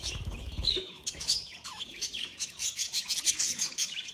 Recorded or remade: remade